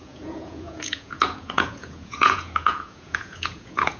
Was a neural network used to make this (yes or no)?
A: yes